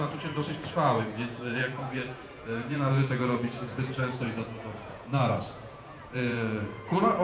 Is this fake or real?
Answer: fake